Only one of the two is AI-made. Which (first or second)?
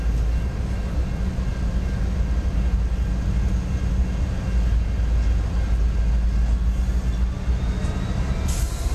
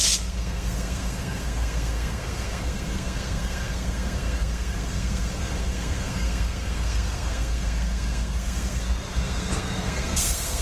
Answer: second